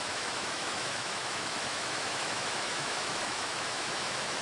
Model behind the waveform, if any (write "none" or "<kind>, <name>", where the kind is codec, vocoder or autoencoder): autoencoder, DAC-VAE